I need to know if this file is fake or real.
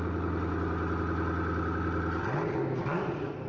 real